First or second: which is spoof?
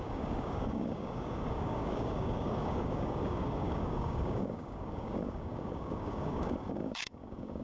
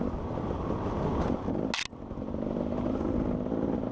first